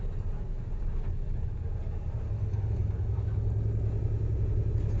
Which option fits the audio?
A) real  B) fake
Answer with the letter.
A